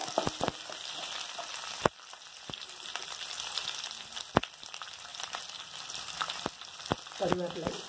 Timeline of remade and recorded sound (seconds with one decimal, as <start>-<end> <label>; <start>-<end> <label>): 0.0-7.9 recorded